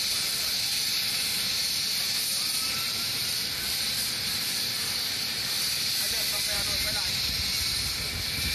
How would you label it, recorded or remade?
remade